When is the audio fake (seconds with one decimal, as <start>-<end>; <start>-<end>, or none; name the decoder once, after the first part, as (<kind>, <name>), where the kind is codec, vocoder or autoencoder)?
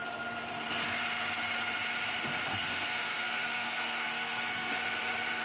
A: 2.5-4.7 (codec, SNAC)